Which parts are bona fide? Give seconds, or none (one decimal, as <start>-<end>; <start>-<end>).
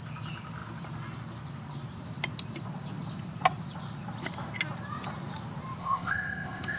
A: 0.0-5.8